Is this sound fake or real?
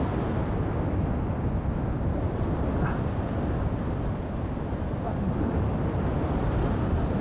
real